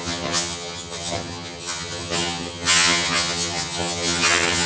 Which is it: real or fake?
fake